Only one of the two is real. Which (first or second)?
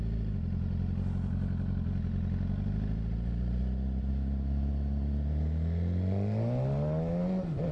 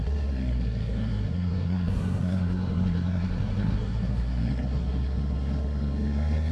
first